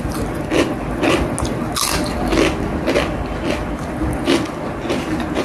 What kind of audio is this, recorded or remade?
recorded